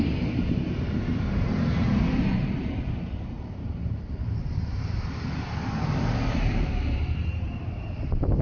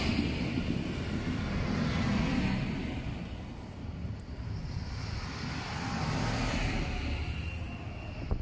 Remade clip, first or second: first